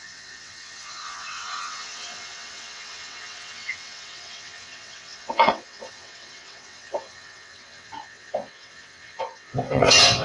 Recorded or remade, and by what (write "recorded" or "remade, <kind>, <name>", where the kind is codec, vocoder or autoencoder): remade, vocoder, WaveNeXt